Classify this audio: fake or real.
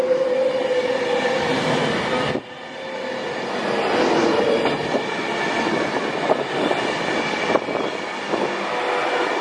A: real